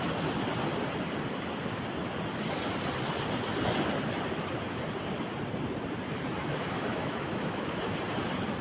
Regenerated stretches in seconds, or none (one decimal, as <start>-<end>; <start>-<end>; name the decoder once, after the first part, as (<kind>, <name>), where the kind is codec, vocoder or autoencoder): 6.4-7.9 (autoencoder, DAC-VAE)